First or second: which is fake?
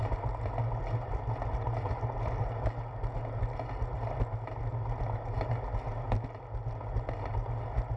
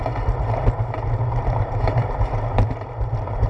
second